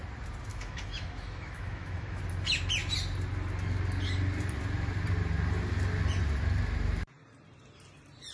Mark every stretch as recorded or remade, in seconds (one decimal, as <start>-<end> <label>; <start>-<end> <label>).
0.0-0.5 recorded; 0.5-2.2 remade; 2.2-8.3 recorded